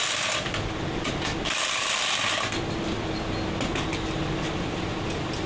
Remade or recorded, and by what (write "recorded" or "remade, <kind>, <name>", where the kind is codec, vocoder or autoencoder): recorded